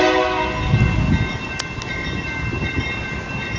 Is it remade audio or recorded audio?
recorded